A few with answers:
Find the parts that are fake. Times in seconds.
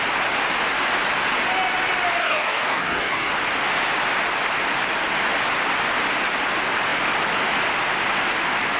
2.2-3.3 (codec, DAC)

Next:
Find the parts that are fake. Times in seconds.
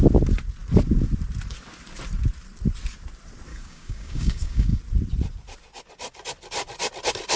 3.5-4.8 (codec, DAC)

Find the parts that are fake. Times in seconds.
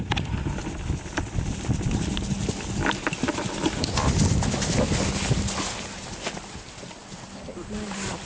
none